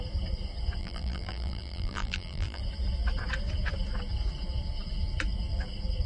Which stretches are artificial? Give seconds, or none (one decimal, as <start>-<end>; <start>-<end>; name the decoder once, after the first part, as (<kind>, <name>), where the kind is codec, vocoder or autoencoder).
0.8-2.6 (vocoder, BigVGAN v2)